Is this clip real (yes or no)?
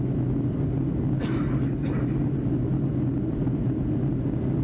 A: yes